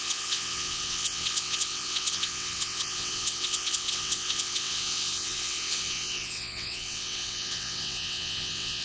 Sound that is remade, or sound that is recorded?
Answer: remade